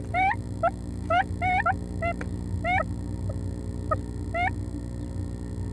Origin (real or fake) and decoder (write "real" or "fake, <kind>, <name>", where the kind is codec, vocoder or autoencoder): real